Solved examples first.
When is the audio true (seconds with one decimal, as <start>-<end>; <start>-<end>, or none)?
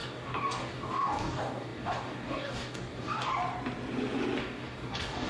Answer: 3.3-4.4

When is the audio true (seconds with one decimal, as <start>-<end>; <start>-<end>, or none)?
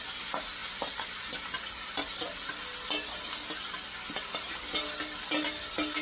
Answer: 0.0-6.0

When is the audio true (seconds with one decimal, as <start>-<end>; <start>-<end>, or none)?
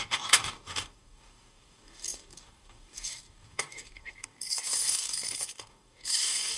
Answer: none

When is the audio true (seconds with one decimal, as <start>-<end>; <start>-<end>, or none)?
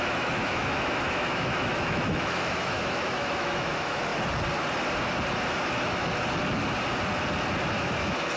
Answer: 4.1-7.8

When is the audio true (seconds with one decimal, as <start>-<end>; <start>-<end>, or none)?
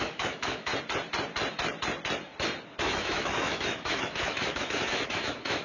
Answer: 0.7-2.8